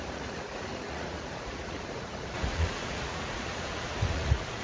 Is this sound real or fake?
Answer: fake